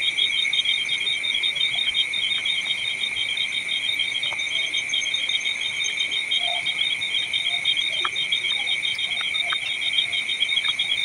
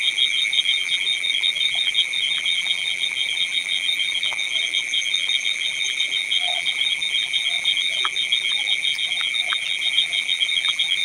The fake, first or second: second